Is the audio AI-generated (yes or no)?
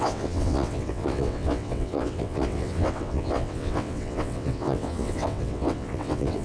yes